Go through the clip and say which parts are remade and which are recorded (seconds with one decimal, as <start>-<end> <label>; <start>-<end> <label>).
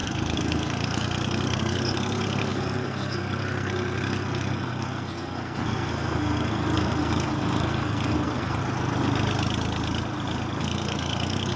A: 0.0-8.6 remade; 8.6-10.6 recorded; 10.6-11.6 remade